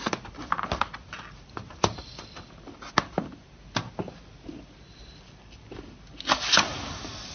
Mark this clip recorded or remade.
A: recorded